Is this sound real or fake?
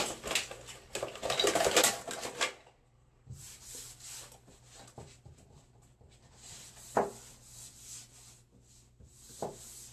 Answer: real